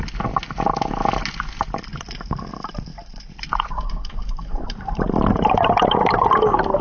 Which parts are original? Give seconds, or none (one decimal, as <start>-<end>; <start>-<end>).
0.0-2.9; 5.3-6.8